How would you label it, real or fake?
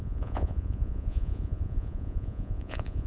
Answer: fake